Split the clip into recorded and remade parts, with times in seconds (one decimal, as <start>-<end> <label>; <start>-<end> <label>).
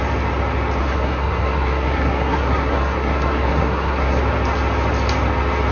0.0-0.8 recorded; 0.8-4.2 remade; 4.2-5.7 recorded